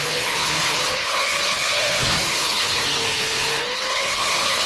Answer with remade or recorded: remade